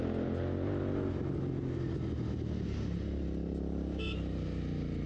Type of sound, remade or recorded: recorded